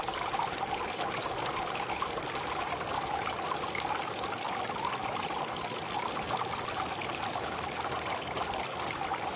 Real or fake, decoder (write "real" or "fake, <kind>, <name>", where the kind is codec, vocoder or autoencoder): real